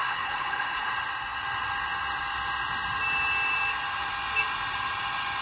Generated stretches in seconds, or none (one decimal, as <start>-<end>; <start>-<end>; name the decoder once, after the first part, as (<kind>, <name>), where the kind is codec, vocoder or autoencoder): 0.0-0.9 (codec, HILCodec)